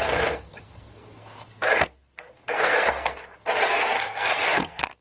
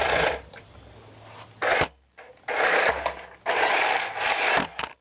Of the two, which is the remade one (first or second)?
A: first